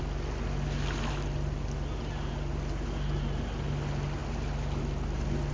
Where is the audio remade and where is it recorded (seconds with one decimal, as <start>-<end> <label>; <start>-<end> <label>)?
0.0-5.5 recorded